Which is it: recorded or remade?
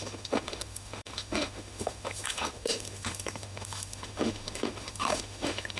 remade